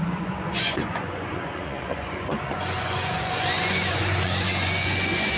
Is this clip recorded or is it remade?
remade